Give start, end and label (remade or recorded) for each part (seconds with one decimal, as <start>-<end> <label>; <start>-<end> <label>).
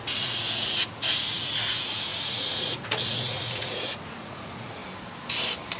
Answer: 0.0-4.8 remade; 4.8-5.8 recorded